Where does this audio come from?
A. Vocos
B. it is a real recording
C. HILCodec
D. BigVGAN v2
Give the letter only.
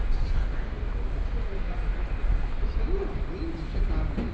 B